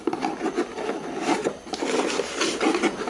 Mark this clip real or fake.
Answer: real